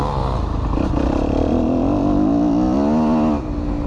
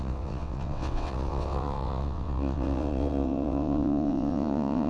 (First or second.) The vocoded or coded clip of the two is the second